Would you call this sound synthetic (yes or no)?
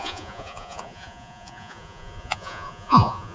yes